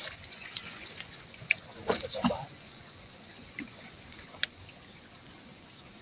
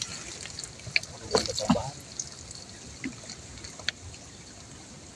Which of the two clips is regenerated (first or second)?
first